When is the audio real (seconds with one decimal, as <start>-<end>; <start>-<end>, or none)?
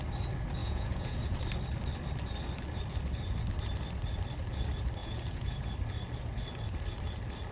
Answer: 0.0-0.6; 1.4-5.0; 5.6-7.5